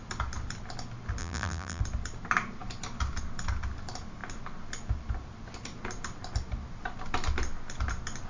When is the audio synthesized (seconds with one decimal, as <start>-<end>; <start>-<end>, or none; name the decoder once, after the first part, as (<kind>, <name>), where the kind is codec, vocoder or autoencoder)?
1.2-1.8 (vocoder, BigVGAN v2)